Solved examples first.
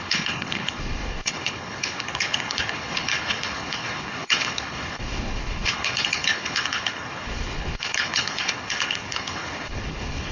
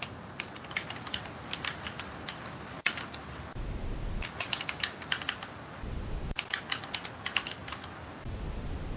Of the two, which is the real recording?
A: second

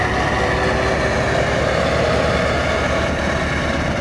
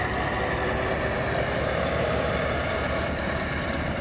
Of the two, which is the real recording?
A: first